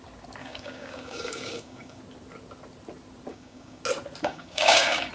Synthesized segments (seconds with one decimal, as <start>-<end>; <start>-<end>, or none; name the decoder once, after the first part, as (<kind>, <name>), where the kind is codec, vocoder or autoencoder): 0.4-2.0 (codec, DAC); 3.3-3.8; 4.2-5.1